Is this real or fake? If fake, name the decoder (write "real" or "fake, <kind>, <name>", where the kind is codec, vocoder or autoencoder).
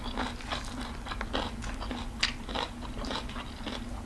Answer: real